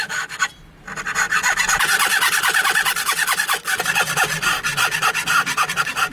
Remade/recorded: recorded